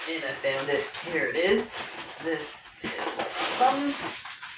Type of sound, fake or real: real